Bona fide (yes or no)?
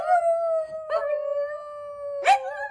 yes